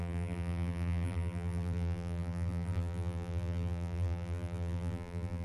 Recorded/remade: remade